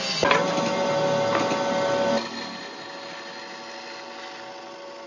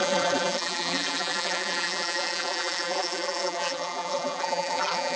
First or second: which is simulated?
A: second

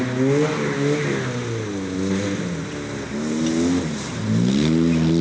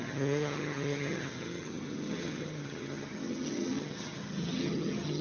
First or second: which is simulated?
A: second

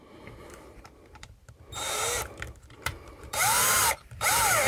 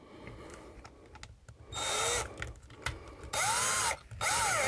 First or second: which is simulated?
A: first